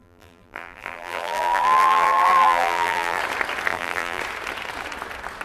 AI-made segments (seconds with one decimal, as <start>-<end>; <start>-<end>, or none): 0.0-3.2; 3.7-4.2